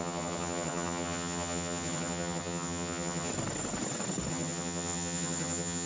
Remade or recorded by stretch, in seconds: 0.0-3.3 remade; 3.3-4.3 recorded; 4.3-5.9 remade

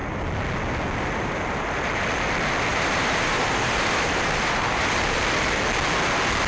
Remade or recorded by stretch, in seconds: 0.0-2.7 recorded; 2.7-5.2 remade; 5.2-6.5 recorded

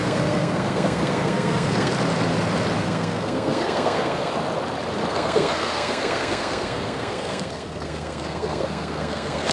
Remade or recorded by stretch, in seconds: 0.0-1.9 remade; 1.9-2.8 recorded; 2.8-4.3 remade; 4.3-5.1 recorded; 5.1-9.5 remade

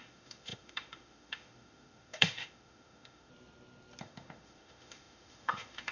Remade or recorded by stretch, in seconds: 0.0-3.3 remade; 3.3-4.0 recorded; 4.0-5.9 remade